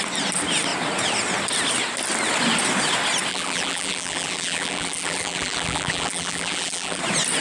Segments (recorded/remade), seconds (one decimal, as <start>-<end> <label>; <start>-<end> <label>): 0.0-3.3 recorded; 3.3-7.0 remade; 7.0-7.4 recorded